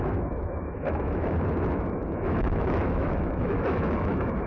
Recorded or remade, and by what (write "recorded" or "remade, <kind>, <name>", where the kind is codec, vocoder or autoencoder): remade, autoencoder, DAC-VAE